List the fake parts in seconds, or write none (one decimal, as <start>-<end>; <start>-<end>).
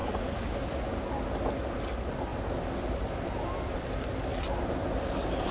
none